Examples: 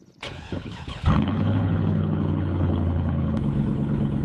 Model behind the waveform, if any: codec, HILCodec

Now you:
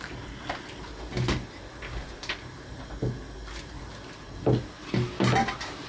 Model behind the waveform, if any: none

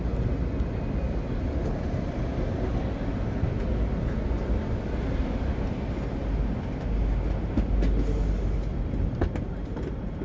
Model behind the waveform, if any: none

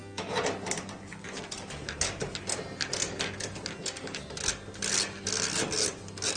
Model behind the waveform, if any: none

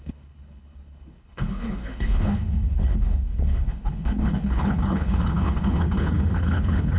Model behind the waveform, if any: codec, HILCodec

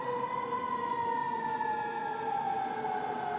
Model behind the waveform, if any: none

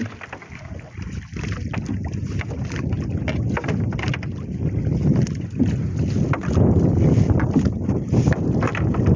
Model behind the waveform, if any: none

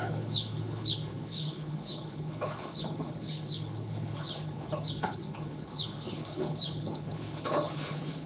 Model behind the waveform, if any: codec, HILCodec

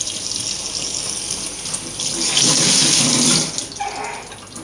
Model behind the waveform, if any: none